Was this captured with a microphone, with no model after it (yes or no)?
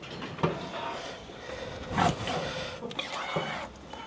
yes